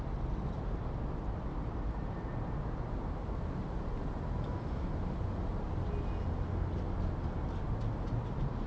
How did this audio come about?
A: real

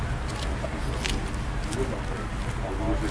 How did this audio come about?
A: real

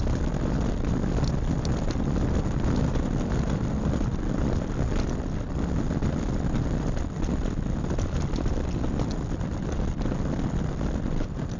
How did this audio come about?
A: real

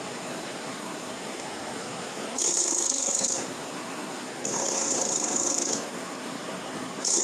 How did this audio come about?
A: fake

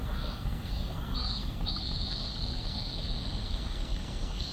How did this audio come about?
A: fake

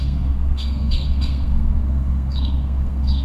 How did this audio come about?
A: fake